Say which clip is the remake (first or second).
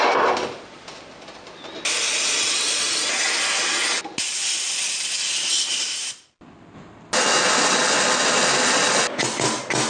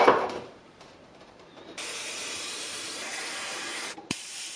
second